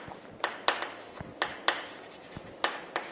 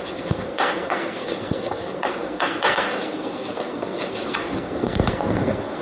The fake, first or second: second